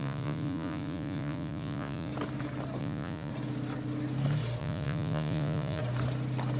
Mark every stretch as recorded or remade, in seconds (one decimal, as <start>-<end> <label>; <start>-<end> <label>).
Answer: 0.0-2.1 remade; 2.1-2.8 recorded; 2.8-3.3 remade; 3.3-4.6 recorded; 4.6-5.8 remade; 5.8-6.6 recorded